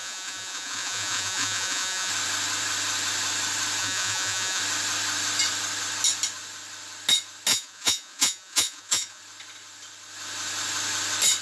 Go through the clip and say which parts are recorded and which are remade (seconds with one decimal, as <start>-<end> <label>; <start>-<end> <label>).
0.0-2.1 remade; 2.1-3.8 recorded; 3.8-4.6 remade; 4.6-7.5 recorded; 7.5-9.2 remade; 9.2-11.4 recorded